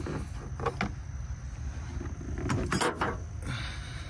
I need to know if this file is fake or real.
real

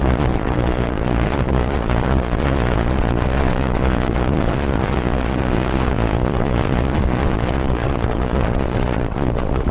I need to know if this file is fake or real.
fake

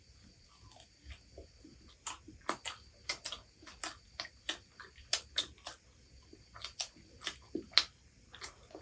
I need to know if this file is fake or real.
real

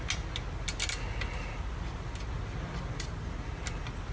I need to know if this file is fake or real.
real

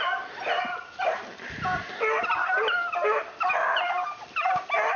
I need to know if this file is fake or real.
real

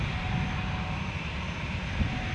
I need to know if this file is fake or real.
real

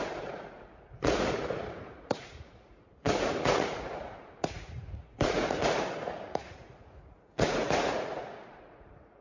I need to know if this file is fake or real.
fake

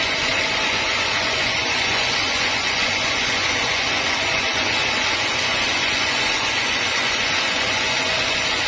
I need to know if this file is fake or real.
fake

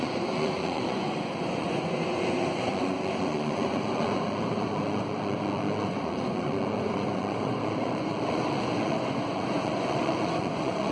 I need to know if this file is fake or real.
fake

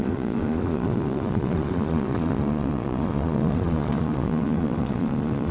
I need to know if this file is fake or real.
fake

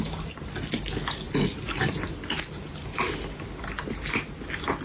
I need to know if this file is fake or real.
real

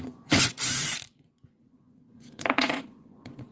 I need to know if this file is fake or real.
fake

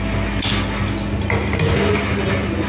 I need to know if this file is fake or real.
real